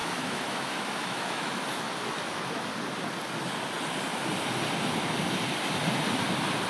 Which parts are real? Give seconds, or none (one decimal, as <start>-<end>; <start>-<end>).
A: 2.7-6.7